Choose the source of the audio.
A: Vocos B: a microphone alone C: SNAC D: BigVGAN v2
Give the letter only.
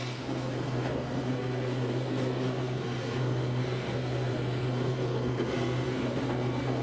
C